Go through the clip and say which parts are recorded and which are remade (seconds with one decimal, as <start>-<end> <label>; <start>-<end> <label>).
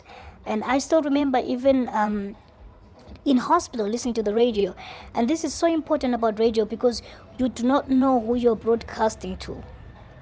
0.0-4.6 remade; 4.6-7.4 recorded; 7.4-8.9 remade; 8.9-9.7 recorded; 9.7-10.2 remade